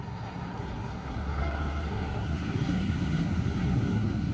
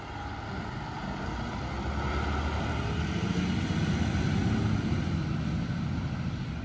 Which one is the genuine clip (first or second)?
second